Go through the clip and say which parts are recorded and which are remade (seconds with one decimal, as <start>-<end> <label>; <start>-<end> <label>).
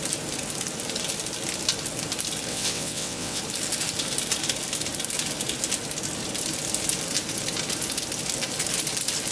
0.0-2.5 recorded; 2.5-3.4 remade; 3.4-9.3 recorded